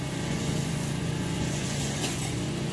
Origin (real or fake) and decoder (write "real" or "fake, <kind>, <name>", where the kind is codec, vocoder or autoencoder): fake, vocoder, Vocos